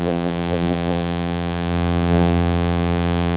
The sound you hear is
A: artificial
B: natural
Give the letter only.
A